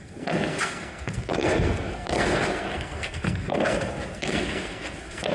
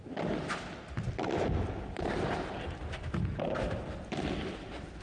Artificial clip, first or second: first